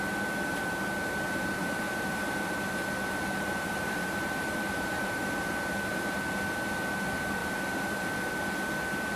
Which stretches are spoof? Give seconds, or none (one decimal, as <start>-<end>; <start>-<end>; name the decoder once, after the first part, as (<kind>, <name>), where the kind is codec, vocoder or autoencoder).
1.6-6.2 (vocoder, BigVGAN v2); 7.4-8.3